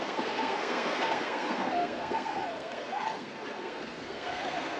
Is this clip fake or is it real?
fake